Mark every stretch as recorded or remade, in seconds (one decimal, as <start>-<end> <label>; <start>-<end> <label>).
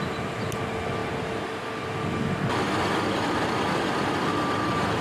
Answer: 0.0-5.0 recorded